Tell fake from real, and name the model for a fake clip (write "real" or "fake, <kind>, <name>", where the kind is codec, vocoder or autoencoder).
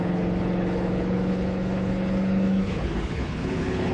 fake, codec, HILCodec